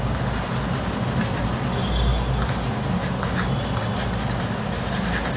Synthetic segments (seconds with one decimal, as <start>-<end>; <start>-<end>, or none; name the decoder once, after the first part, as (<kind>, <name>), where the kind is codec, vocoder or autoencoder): none